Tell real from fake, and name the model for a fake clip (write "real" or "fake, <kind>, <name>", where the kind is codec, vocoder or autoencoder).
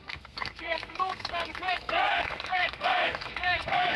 fake, codec, SNAC